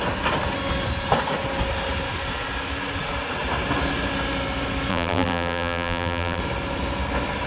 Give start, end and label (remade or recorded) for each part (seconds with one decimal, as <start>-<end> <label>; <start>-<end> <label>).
0.0-4.9 recorded; 4.9-6.4 remade; 6.4-7.5 recorded